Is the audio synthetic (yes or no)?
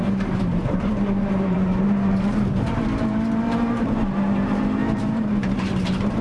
yes